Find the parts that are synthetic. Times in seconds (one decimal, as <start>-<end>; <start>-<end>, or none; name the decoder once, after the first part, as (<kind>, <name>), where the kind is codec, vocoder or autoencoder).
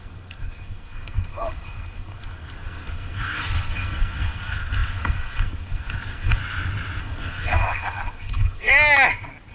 0.0-6.4 (codec, SNAC); 7.0-8.7